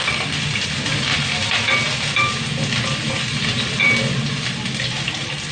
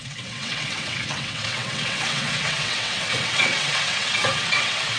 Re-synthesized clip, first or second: second